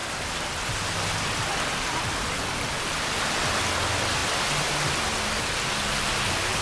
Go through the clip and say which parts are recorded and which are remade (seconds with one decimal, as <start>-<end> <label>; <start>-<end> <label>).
0.0-6.6 recorded